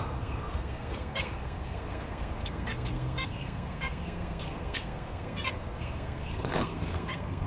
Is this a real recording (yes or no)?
no